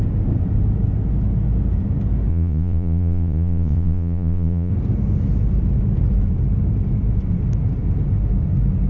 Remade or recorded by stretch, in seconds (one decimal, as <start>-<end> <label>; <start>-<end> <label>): 0.0-2.3 recorded; 2.3-4.7 remade; 4.7-8.9 recorded